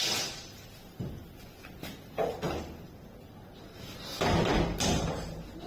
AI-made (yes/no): no